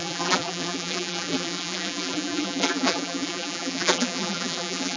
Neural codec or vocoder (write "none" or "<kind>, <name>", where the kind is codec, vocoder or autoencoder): vocoder, BigVGAN v2